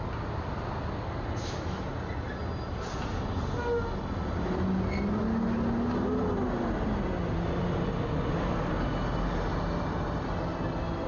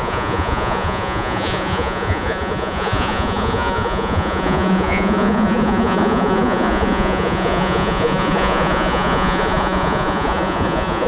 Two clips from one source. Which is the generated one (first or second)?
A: second